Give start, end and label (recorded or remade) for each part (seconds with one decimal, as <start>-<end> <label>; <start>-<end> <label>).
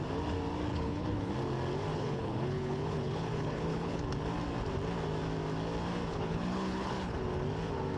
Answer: 0.0-0.7 recorded; 0.7-1.3 remade; 1.3-1.9 recorded; 1.9-4.0 remade; 4.0-6.1 recorded; 6.1-7.2 remade; 7.2-8.0 recorded